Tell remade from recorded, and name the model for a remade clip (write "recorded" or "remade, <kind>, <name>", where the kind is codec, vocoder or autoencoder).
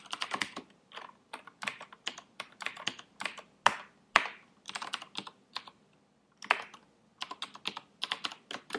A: recorded